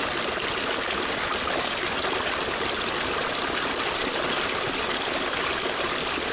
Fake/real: real